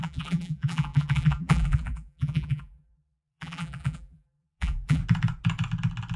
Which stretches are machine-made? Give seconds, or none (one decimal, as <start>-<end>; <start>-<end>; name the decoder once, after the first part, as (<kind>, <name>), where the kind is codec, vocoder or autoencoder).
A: 0.0-5.0 (vocoder, BigVGAN v2)